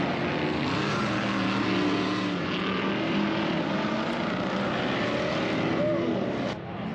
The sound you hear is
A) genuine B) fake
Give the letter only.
A